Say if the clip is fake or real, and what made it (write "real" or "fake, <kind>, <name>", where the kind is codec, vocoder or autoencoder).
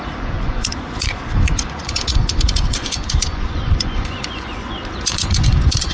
fake, vocoder, Vocos